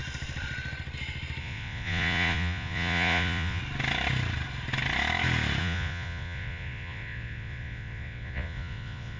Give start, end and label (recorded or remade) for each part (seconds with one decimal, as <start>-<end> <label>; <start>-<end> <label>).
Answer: 0.0-1.4 recorded; 1.4-3.6 remade; 3.6-5.6 recorded; 5.6-9.2 remade